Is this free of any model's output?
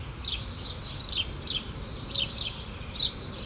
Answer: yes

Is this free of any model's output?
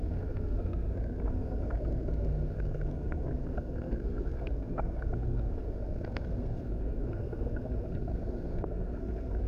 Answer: no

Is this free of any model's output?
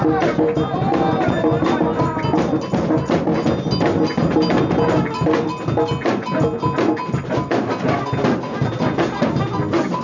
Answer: yes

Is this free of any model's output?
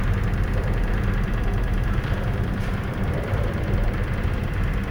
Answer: no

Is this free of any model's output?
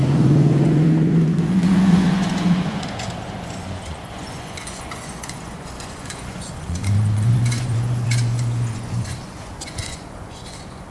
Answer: no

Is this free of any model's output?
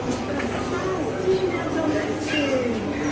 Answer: yes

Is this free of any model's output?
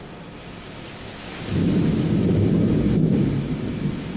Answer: yes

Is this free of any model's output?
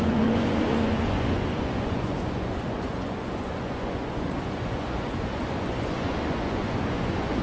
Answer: no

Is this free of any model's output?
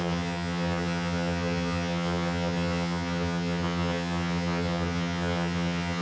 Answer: no